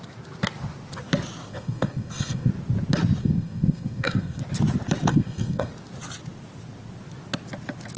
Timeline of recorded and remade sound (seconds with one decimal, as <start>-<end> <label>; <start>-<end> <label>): 0.0-1.5 recorded; 1.5-2.5 remade; 2.5-3.2 recorded; 3.2-4.4 remade; 4.4-5.1 recorded; 5.1-5.7 remade; 5.7-8.0 recorded